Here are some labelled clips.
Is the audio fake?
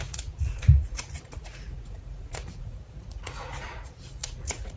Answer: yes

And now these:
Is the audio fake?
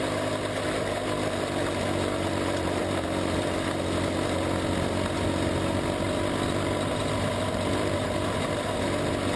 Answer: no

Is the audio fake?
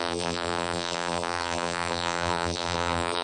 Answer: yes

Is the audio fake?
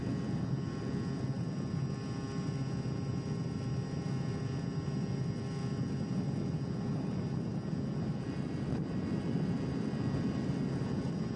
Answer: no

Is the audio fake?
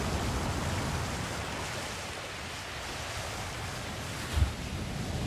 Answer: no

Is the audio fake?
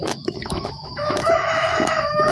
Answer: yes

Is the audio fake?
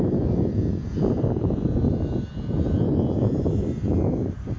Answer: no